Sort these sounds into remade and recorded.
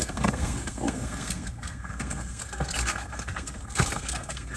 remade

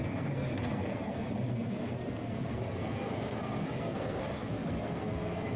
remade